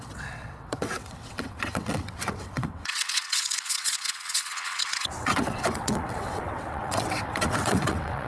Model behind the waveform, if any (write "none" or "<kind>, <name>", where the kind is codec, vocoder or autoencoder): vocoder, WaveNeXt